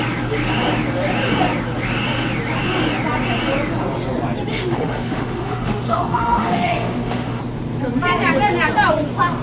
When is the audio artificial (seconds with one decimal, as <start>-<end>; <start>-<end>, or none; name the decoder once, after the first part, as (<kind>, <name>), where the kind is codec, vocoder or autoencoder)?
4.5-7.4 (autoencoder, DAC-VAE)